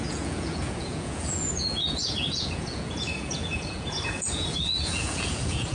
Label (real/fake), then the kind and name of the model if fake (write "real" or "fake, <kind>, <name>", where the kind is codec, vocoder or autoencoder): fake, vocoder, Vocos